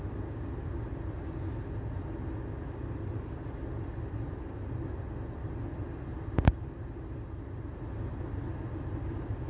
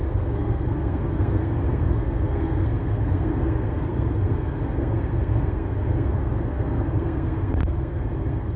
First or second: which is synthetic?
second